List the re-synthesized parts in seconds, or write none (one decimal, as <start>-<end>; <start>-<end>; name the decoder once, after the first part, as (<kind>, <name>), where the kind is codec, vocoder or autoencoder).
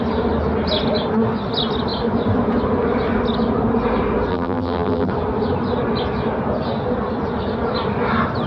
4.3-5.1 (vocoder, BigVGAN v2)